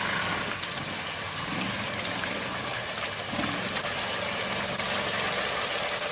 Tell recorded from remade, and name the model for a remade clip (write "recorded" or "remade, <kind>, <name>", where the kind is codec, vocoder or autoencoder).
recorded